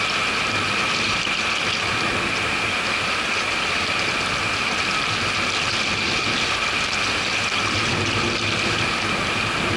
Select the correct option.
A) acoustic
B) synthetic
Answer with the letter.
A